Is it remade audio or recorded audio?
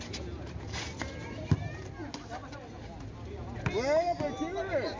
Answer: recorded